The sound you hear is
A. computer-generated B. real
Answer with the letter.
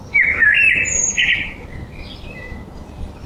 B